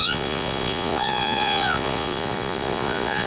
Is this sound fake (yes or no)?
yes